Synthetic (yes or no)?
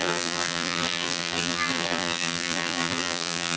yes